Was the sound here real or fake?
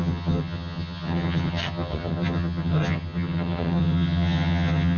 fake